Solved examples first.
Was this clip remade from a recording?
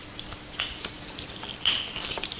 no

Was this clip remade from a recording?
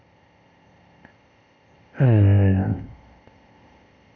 yes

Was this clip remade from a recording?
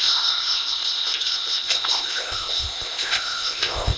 yes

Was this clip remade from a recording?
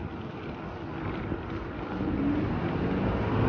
no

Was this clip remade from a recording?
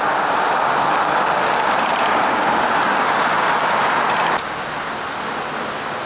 no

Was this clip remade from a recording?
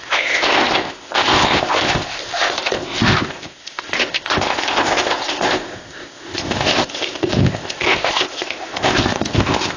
yes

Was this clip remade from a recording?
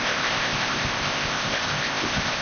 yes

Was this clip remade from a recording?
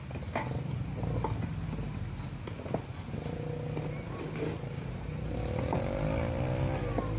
no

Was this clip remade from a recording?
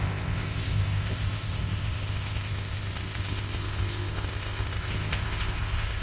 yes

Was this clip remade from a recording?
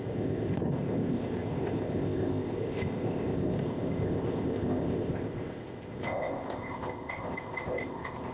yes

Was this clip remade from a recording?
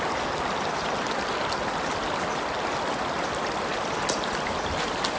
no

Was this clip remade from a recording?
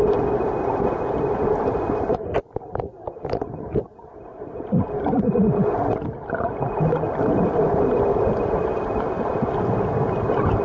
no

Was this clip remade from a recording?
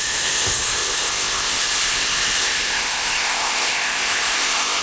yes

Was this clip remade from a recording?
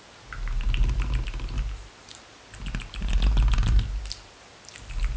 no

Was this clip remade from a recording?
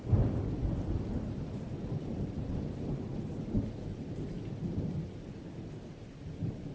no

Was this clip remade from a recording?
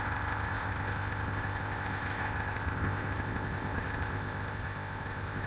yes